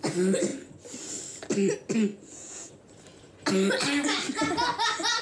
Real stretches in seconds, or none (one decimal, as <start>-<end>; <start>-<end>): 0.0-2.1; 2.7-5.2